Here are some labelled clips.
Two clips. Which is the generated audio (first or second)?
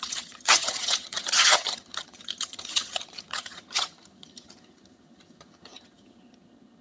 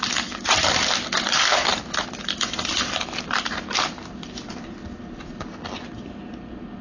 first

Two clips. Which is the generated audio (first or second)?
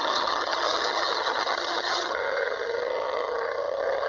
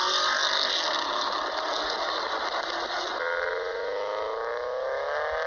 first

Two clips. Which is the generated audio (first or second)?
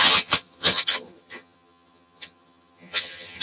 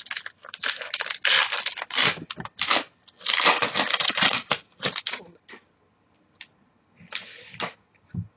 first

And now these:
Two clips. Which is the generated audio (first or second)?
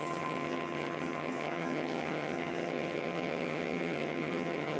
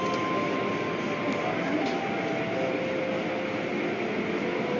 first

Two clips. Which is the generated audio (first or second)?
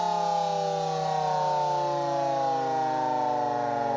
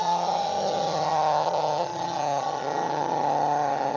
second